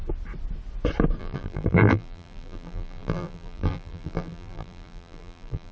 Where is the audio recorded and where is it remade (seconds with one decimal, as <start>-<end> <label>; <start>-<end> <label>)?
0.0-1.2 recorded; 1.2-5.7 remade